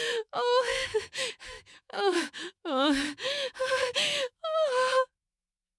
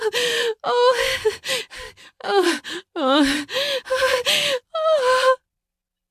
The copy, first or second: first